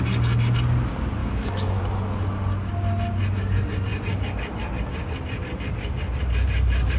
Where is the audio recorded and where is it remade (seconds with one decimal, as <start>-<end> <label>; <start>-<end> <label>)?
0.0-1.2 recorded; 1.2-1.8 remade; 1.8-7.0 recorded